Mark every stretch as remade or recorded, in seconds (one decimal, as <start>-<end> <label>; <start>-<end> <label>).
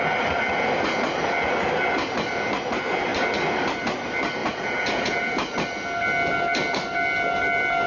0.0-4.4 recorded; 4.4-5.3 remade; 5.3-7.9 recorded